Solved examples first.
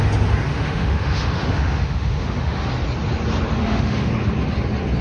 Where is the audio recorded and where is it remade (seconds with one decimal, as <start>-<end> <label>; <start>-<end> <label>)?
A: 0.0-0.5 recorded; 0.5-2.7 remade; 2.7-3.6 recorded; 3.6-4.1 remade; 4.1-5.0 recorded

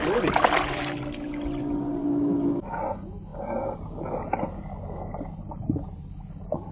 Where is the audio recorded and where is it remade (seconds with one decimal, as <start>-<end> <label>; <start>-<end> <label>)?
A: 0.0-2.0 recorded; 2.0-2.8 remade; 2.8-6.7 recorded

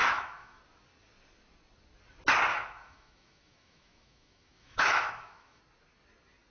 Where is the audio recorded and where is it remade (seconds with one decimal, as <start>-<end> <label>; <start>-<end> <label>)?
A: 0.0-0.6 remade; 0.6-2.5 recorded; 2.5-5.6 remade; 5.6-6.5 recorded

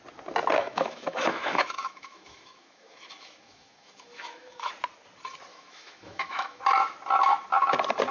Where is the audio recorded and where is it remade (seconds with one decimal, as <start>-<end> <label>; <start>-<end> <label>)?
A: 0.0-0.6 recorded; 0.6-4.7 remade; 4.7-5.5 recorded; 5.5-6.6 remade; 6.6-8.1 recorded